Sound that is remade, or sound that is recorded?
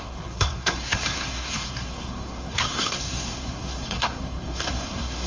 remade